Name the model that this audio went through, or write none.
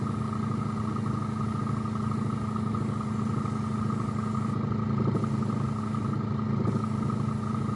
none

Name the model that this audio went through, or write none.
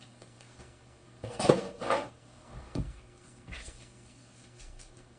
codec, SNAC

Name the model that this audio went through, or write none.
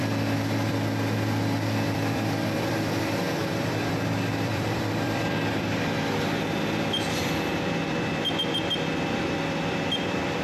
vocoder, BigVGAN v2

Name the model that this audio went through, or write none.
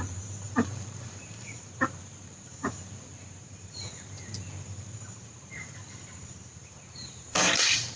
vocoder, BigVGAN v2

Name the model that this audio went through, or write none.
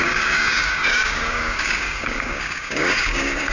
codec, DAC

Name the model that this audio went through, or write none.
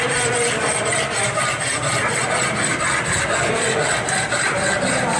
none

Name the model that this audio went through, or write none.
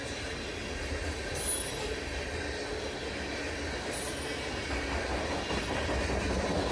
none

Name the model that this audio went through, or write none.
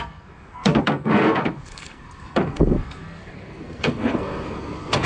codec, SNAC